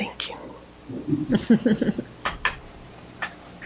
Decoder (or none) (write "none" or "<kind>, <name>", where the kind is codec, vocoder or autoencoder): none